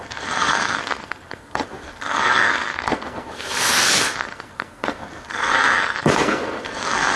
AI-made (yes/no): yes